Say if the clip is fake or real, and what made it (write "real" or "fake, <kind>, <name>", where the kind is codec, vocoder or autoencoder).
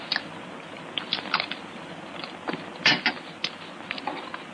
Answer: real